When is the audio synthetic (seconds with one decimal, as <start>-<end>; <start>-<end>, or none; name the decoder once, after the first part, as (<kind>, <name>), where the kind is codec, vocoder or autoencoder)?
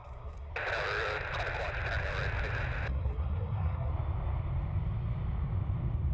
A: 0.0-0.5 (codec, SNAC); 2.9-3.9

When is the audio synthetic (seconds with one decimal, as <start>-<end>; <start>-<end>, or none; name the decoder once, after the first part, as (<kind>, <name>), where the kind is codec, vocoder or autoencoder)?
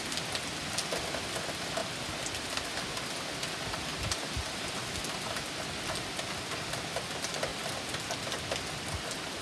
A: none